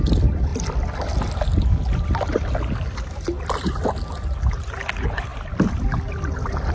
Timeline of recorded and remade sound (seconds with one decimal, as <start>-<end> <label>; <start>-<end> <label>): 0.0-6.7 recorded